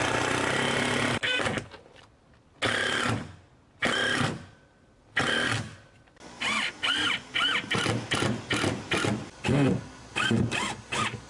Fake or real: real